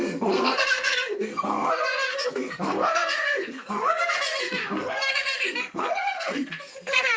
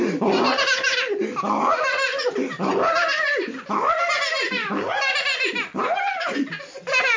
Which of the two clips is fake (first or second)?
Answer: first